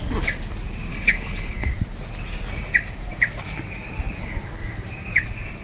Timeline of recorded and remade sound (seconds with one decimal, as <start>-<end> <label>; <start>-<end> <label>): 0.0-0.9 recorded; 0.9-1.7 remade; 1.7-5.6 recorded